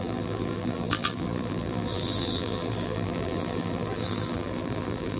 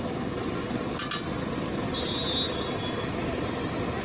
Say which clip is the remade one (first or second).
first